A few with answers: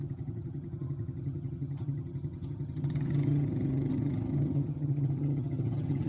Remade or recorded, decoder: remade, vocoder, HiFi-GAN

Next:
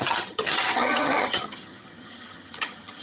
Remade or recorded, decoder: remade, vocoder, HiFi-GAN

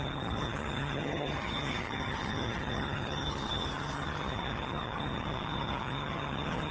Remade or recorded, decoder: remade, vocoder, HiFi-GAN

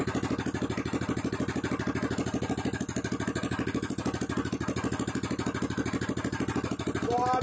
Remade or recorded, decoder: recorded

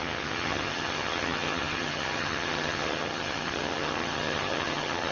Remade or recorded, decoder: remade, vocoder, HiFi-GAN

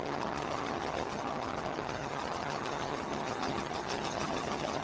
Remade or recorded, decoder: remade, vocoder, HiFi-GAN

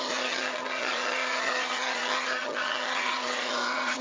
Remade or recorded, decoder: remade, vocoder, HiFi-GAN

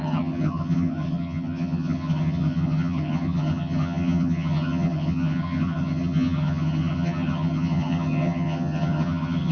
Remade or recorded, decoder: remade, vocoder, HiFi-GAN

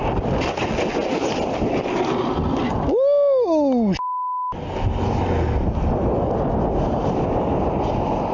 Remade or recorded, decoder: recorded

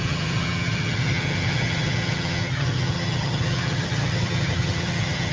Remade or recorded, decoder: remade, vocoder, HiFi-GAN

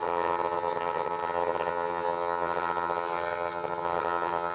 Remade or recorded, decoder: remade, vocoder, HiFi-GAN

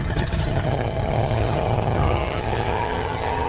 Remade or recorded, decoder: remade, vocoder, HiFi-GAN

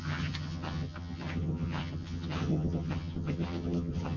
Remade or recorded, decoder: remade, vocoder, HiFi-GAN